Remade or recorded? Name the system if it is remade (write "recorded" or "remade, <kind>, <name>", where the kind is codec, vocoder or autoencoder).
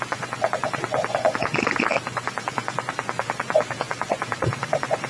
remade, vocoder, Vocos